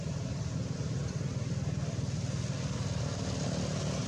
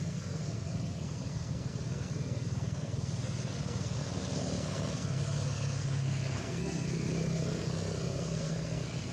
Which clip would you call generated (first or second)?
second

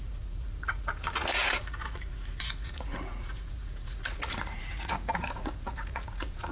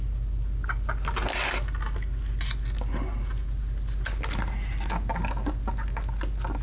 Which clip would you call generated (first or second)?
first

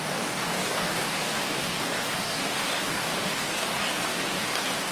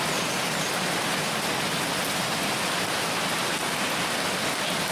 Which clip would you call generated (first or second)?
first